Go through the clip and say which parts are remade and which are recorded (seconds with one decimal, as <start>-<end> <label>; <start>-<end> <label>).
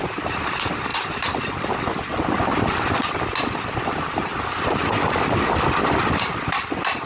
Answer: 0.0-7.1 recorded